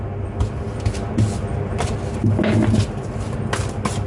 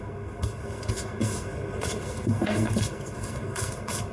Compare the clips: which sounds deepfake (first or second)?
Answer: second